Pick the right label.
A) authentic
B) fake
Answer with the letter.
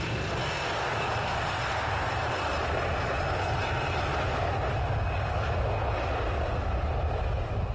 A